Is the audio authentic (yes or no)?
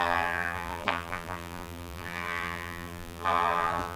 no